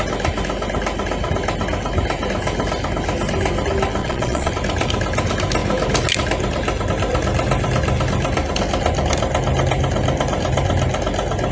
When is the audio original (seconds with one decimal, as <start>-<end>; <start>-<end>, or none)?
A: 0.0-4.0; 4.5-11.5